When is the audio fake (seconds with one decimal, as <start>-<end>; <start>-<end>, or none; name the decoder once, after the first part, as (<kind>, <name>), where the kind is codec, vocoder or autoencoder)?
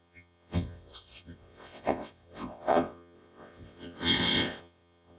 0.0-5.2 (vocoder, WaveNeXt)